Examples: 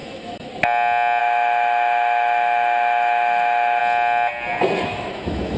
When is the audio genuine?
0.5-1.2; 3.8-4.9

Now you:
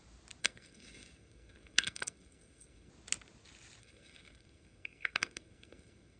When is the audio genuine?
0.0-0.4; 2.9-3.8

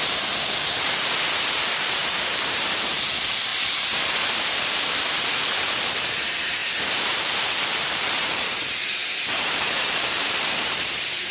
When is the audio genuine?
3.5-5.6